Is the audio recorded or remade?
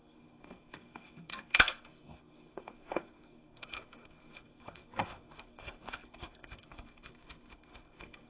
remade